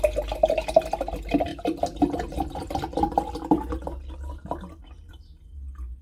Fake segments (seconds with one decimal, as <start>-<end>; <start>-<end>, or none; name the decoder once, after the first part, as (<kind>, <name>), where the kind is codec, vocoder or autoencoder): none